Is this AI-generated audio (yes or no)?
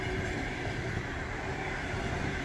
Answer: no